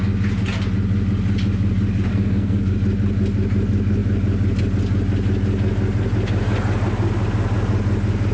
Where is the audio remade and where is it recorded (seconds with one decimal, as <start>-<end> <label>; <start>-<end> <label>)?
0.0-2.1 recorded; 2.1-2.7 remade; 2.7-8.3 recorded